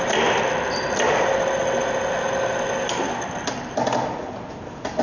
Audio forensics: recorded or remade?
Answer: recorded